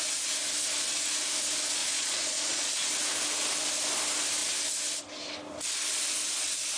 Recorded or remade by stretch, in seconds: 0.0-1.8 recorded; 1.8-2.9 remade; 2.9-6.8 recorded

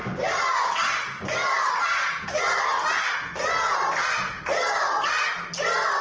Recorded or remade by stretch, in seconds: 0.0-6.0 recorded